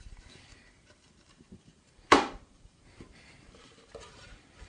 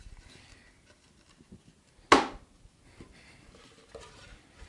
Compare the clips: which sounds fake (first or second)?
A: first